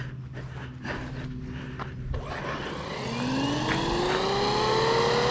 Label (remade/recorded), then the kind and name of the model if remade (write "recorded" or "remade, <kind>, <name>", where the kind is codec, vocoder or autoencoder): recorded